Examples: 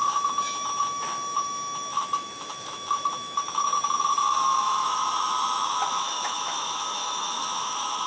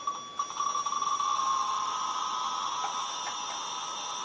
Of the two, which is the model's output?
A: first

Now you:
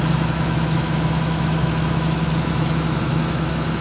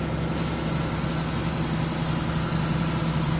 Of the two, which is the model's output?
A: first